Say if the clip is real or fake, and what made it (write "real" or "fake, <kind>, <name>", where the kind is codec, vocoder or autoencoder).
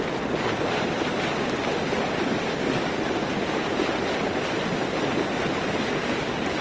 real